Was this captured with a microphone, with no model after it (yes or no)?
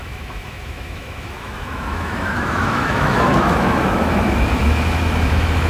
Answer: no